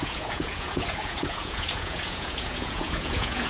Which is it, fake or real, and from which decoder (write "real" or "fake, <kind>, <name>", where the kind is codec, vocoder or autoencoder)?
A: fake, vocoder, Vocos